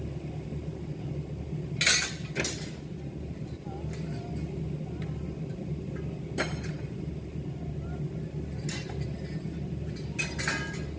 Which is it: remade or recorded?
recorded